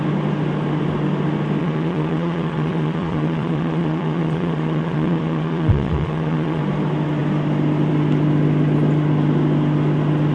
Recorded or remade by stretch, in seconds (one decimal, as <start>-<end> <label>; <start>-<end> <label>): 0.0-1.6 recorded; 1.6-6.6 remade; 6.6-10.3 recorded